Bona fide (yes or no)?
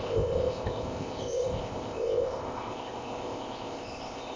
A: no